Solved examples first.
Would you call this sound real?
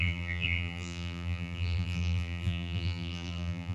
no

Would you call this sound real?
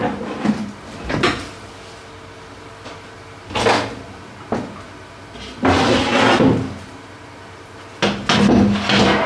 yes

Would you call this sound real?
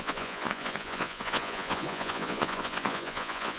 no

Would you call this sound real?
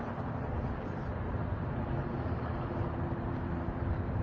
no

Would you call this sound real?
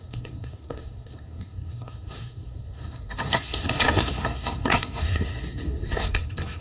no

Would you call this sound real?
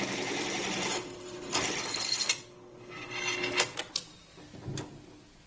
yes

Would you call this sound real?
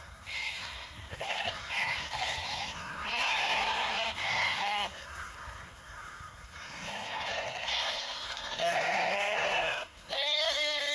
no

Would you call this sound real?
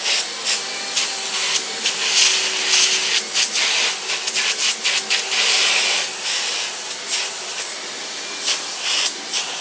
yes